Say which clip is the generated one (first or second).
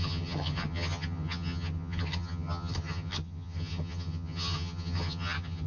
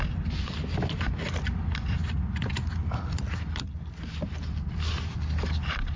first